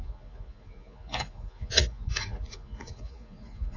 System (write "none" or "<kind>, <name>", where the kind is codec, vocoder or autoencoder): vocoder, Vocos